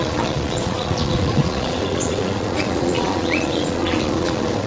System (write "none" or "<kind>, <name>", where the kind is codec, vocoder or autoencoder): vocoder, Vocos